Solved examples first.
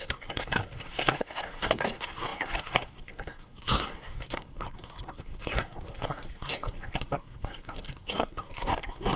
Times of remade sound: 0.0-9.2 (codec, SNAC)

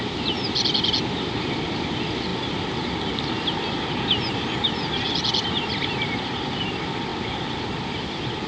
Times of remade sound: none

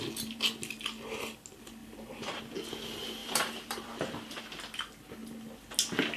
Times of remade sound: 1.8-2.4 (vocoder, BigVGAN v2); 3.2-4.4

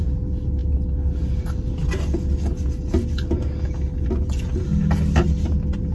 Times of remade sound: none

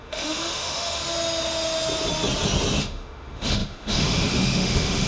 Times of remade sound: 0.0-1.0 (autoencoder, DAC-VAE); 2.8-5.1

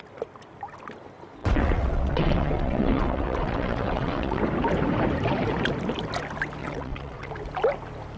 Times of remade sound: 1.4-4.4 (vocoder, WaveNeXt); 6.6-7.3

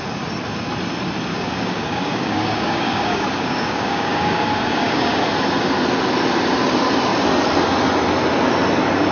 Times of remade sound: 1.3-5.2 (codec, DAC)

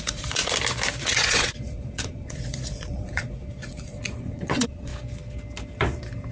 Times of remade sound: 0.0-0.4 (vocoder, Vocos); 1.0-4.9